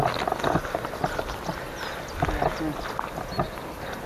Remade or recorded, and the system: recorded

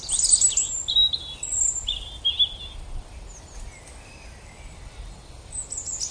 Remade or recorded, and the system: recorded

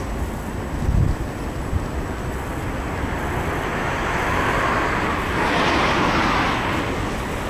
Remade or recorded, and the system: recorded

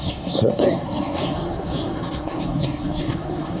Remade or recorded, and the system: remade, codec, SNAC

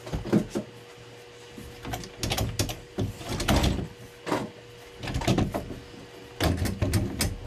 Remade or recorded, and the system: recorded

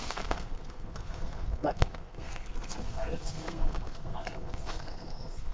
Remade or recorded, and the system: remade, codec, SNAC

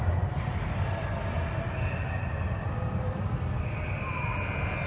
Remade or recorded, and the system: recorded